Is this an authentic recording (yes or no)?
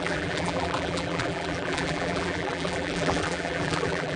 no